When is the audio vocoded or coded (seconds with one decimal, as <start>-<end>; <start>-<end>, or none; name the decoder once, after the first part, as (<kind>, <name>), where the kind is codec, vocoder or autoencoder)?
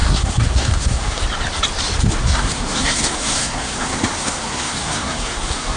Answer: 0.0-1.2 (codec, SNAC); 2.2-5.8